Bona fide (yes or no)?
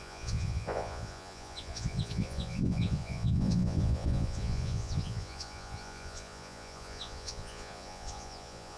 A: no